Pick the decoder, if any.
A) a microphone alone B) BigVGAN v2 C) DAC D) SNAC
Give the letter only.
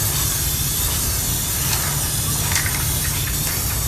A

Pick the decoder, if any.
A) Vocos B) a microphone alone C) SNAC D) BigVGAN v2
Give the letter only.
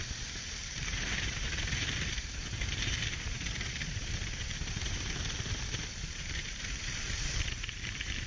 D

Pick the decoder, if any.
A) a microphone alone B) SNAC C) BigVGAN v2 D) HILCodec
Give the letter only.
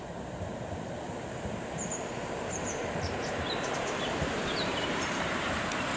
C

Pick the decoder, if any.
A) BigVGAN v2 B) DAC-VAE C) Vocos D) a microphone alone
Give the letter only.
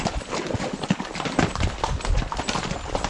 D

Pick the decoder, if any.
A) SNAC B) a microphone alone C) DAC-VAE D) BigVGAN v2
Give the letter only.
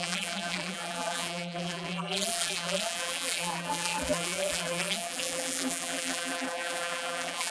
D